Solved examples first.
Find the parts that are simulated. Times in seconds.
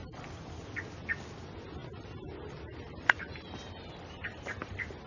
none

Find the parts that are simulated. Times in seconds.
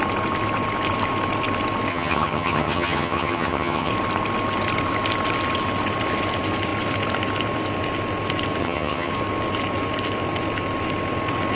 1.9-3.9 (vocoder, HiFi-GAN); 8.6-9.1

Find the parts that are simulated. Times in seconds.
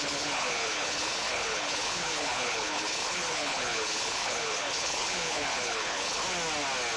0.0-6.2 (codec, HILCodec)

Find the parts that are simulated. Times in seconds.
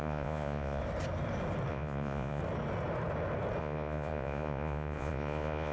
0.0-0.8 (vocoder, Vocos); 1.7-2.4; 3.6-5.7